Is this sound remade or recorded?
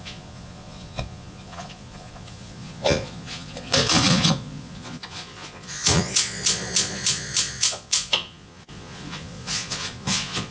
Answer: remade